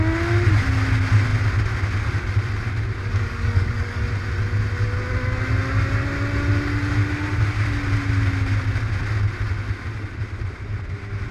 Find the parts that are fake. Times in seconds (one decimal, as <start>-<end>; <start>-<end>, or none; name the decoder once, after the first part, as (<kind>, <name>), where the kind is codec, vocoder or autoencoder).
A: 3.0-4.0 (codec, DAC)

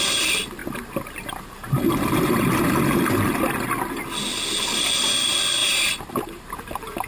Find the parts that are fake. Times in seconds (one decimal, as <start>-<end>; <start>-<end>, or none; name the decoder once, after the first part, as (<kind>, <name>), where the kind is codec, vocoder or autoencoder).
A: 5.6-6.5 (vocoder, BigVGAN v2)